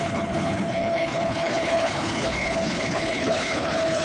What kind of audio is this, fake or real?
fake